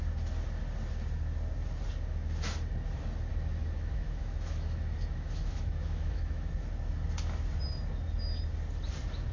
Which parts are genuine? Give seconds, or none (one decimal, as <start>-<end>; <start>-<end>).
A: 0.0-3.3; 6.5-9.3